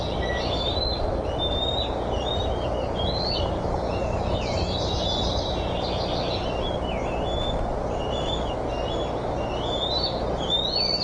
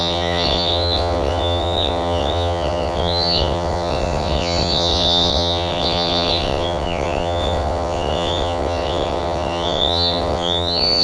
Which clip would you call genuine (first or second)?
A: first